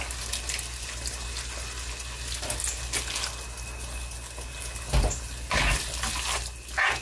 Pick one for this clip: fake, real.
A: real